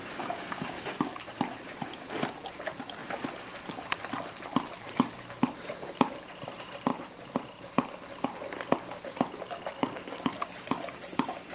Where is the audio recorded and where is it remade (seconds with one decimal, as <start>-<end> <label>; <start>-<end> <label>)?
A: 0.0-1.0 remade; 1.0-9.7 recorded; 9.7-10.4 remade; 10.4-11.5 recorded